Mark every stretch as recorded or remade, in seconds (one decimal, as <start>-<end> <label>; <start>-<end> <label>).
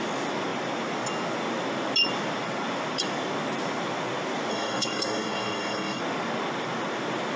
0.0-4.5 recorded; 4.5-6.0 remade; 6.0-7.4 recorded